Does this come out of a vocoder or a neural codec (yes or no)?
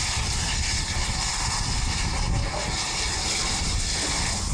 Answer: no